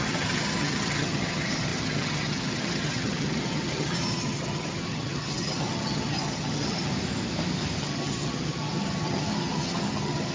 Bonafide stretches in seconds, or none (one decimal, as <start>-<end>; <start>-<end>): 6.9-7.8

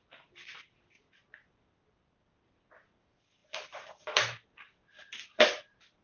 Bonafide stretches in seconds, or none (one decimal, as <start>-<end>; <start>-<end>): 0.0-6.0

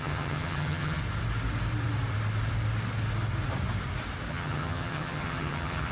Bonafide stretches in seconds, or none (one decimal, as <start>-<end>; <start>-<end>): 1.0-4.3

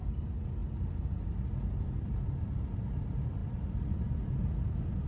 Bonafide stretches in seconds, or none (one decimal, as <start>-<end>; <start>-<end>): 0.0-5.1

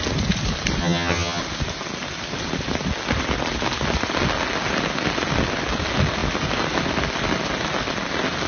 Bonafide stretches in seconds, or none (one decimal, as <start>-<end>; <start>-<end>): 0.0-0.8; 1.4-8.5

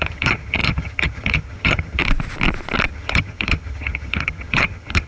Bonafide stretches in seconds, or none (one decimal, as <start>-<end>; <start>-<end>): 2.0-2.9

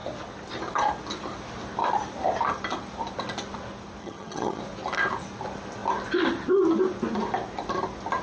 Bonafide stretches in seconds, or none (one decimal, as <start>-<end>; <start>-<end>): 0.0-4.0; 4.6-8.2

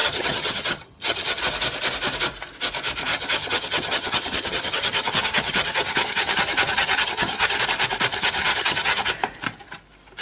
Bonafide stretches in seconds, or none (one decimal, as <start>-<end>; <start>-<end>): 1.4-3.1; 7.6-8.1; 9.1-10.2